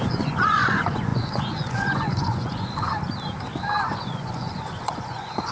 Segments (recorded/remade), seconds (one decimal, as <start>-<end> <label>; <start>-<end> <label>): 0.0-2.9 remade; 2.9-3.8 recorded; 3.8-5.5 remade

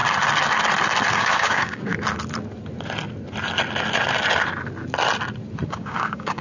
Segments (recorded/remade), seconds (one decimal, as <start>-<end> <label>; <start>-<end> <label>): 0.0-1.1 recorded; 1.1-1.9 remade; 1.9-5.7 recorded; 5.7-6.4 remade

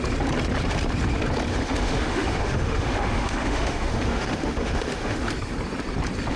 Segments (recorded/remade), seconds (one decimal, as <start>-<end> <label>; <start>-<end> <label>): 0.0-1.5 recorded; 1.5-5.3 remade; 5.3-6.4 recorded

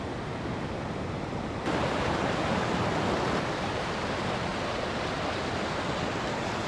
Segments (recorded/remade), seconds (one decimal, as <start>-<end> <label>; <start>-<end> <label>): 0.0-6.7 recorded